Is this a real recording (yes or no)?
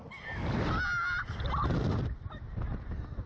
yes